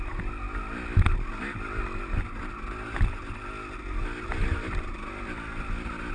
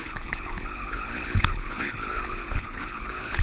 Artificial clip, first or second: second